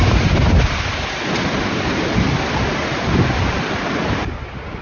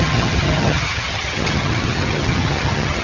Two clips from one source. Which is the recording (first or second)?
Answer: first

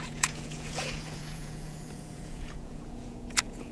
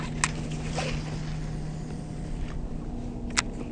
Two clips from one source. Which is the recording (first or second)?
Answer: second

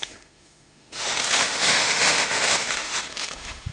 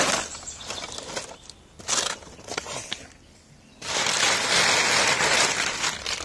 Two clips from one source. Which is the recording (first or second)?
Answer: second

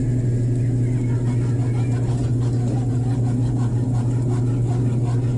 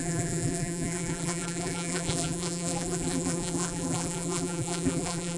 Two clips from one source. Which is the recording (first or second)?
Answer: first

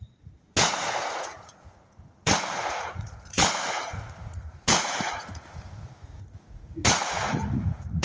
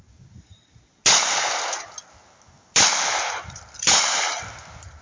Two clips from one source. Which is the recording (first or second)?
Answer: second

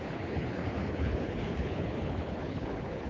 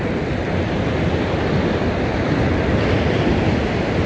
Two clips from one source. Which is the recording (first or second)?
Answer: second